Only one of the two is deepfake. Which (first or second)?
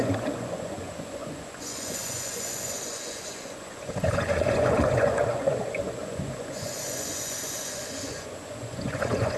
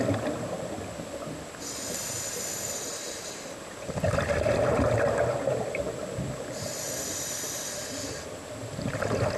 first